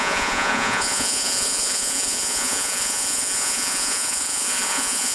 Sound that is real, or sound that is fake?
fake